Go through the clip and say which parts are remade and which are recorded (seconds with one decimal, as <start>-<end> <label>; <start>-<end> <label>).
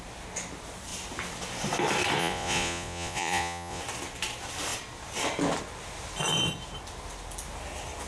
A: 0.0-2.2 recorded; 2.2-3.8 remade; 3.8-8.1 recorded